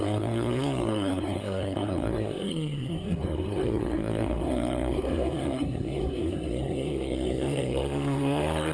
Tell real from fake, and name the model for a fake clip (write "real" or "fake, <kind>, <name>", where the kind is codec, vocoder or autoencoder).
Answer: fake, codec, SNAC